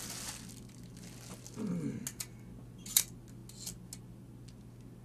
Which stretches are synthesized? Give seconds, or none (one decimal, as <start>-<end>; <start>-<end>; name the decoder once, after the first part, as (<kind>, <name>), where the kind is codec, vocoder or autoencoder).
none